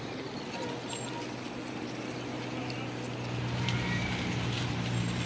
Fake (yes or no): no